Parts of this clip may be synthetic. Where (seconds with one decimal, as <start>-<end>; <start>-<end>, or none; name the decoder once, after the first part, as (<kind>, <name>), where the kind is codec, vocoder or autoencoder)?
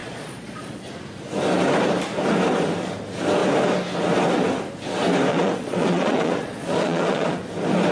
0.0-0.9 (vocoder, Vocos); 5.3-7.4